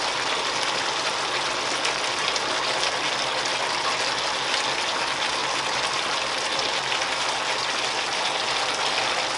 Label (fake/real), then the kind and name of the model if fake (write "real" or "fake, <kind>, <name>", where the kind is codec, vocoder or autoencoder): real